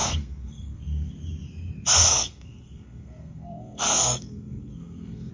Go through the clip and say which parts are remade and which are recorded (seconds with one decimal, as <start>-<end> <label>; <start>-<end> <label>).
0.0-1.1 remade; 1.1-2.0 recorded; 2.0-5.3 remade